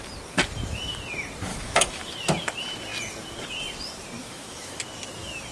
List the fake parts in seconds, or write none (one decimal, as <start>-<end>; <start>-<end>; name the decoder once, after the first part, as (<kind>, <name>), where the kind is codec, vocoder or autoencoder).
1.5-2.0 (autoencoder, DAC-VAE); 4.2-4.8